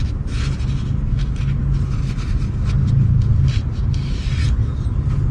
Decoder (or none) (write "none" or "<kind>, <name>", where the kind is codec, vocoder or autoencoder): none